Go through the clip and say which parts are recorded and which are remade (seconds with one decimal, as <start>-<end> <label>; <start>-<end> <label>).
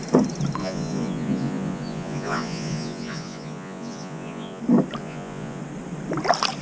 0.0-0.6 recorded; 0.6-4.6 remade; 4.6-5.0 recorded; 5.0-5.6 remade; 5.6-6.6 recorded